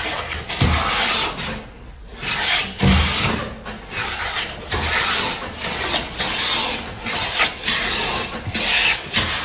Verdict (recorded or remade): recorded